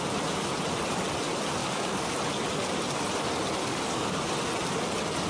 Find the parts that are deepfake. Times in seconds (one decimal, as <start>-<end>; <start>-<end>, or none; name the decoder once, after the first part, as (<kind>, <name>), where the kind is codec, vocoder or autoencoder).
1.6-2.1 (codec, DAC); 3.6-4.2